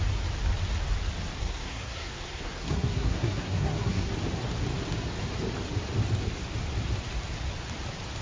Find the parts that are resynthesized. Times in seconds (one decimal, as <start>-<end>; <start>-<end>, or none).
1.4-4.1